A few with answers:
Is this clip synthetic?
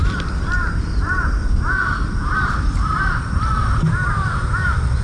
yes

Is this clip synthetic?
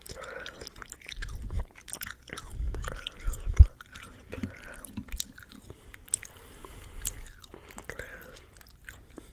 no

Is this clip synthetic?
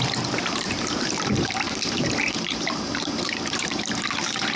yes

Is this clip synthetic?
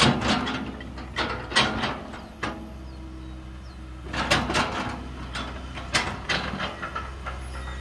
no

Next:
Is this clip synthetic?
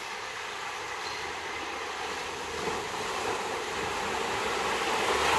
no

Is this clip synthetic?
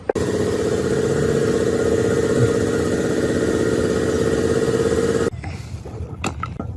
no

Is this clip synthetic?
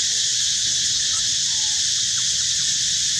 no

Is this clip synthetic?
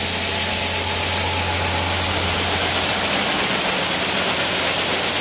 no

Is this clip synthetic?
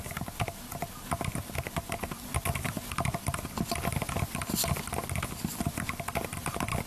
yes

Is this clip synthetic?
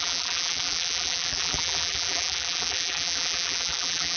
yes